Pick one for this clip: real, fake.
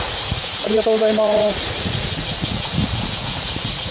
fake